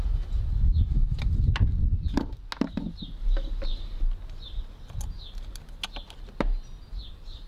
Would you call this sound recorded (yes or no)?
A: yes